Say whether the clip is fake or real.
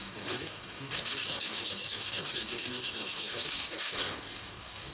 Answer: fake